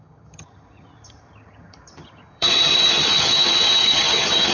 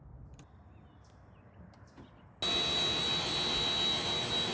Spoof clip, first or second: first